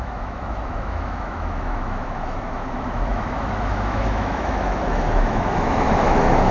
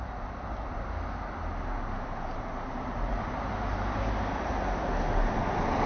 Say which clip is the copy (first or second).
first